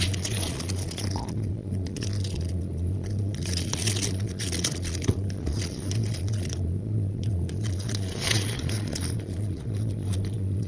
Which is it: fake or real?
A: fake